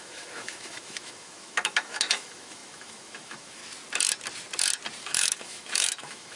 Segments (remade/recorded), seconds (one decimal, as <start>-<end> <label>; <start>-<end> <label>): 0.0-3.6 remade; 3.6-5.0 recorded; 5.0-6.4 remade

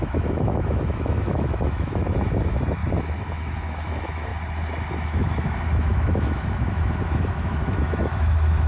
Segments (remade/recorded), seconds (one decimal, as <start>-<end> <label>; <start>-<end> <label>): 0.0-2.8 remade; 2.8-3.3 recorded; 3.3-4.3 remade; 4.3-4.9 recorded; 4.9-8.7 remade

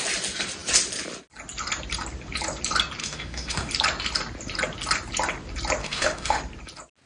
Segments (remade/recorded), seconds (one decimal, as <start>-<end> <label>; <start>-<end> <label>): 0.0-3.0 recorded; 3.0-3.7 remade; 3.7-5.8 recorded; 5.8-6.4 remade; 6.4-7.1 recorded

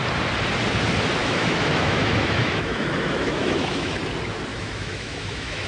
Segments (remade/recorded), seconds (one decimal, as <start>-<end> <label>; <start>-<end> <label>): 0.0-1.2 recorded; 1.2-4.0 remade; 4.0-4.5 recorded; 4.5-5.7 remade

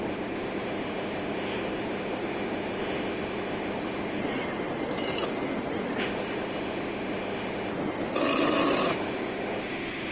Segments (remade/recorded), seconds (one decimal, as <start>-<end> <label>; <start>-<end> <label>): 0.0-4.2 remade; 4.2-6.0 recorded; 6.0-7.7 remade; 7.7-8.9 recorded; 8.9-10.1 remade